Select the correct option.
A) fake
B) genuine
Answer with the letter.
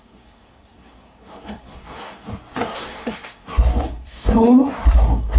A